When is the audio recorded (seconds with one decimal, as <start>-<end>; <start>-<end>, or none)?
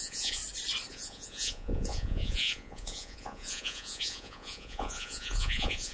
0.4-0.9